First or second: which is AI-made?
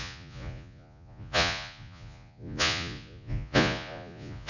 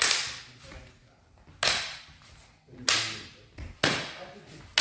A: first